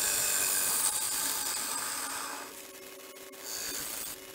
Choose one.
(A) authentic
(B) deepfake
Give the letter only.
A